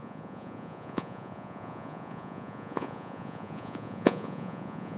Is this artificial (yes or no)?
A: yes